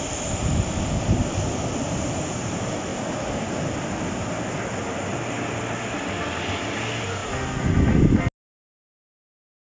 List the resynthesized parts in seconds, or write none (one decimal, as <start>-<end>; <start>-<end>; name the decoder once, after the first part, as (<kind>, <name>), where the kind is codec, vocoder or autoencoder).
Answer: none